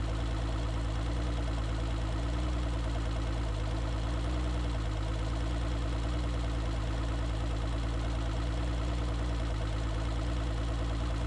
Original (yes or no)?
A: yes